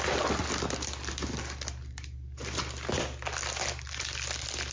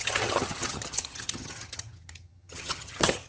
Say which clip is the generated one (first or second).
second